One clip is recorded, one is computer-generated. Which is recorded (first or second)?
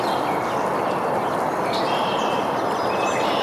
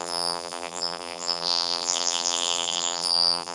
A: first